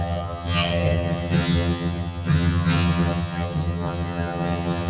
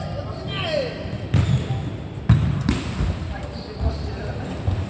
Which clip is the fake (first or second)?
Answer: first